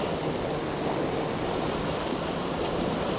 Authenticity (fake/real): real